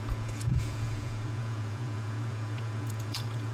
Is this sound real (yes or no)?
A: no